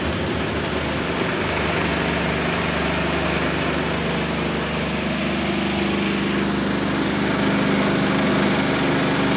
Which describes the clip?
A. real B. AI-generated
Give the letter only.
A